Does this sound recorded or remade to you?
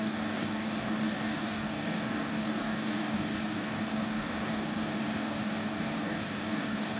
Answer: remade